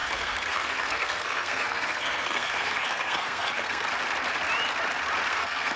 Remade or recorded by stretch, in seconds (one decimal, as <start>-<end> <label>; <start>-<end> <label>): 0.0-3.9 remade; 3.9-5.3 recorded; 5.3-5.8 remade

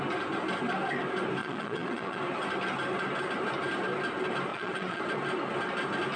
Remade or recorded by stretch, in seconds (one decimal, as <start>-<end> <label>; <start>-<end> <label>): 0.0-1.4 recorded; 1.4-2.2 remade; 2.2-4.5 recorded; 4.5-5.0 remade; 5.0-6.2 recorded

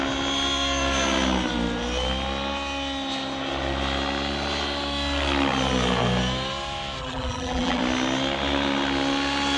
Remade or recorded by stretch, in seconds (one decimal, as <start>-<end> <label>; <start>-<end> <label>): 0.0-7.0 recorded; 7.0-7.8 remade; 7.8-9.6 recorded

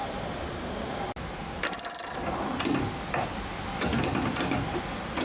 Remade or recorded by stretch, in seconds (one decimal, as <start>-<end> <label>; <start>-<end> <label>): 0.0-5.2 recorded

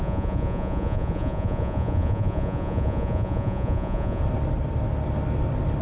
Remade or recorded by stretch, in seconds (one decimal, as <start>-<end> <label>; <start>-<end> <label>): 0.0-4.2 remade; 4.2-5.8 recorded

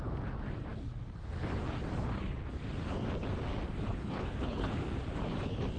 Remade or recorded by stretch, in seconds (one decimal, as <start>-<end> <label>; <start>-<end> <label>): 0.0-3.9 recorded; 3.9-4.7 remade; 4.7-5.8 recorded

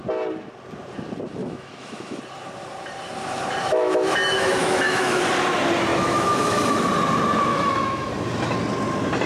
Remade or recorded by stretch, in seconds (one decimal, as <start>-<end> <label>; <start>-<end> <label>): 0.0-1.4 recorded; 1.4-2.2 remade; 2.2-3.6 recorded; 3.6-5.2 remade; 5.2-5.9 recorded; 5.9-6.9 remade; 6.9-7.5 recorded; 7.5-8.1 remade; 8.1-9.3 recorded